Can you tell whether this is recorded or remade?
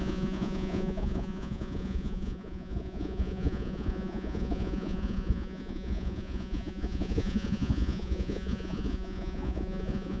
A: remade